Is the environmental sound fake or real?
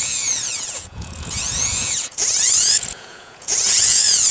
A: fake